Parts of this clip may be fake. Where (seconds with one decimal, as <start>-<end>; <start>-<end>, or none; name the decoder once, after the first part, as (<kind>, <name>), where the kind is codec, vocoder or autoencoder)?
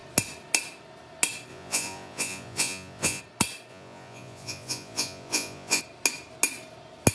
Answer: 1.5-3.2 (vocoder, Vocos); 3.7-5.8